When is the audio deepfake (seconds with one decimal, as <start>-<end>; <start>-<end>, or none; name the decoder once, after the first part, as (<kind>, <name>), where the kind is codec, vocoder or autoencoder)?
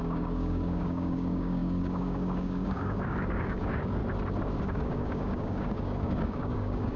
0.0-4.0 (codec, DAC); 4.6-7.0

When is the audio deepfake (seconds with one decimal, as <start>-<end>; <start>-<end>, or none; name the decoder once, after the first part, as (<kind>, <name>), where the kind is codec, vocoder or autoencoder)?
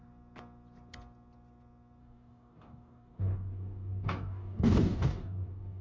2.0-5.8 (codec, DAC)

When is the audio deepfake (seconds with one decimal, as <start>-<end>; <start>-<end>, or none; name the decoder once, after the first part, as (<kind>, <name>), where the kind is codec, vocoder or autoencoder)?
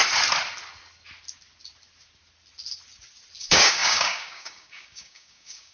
3.4-5.7 (codec, DAC)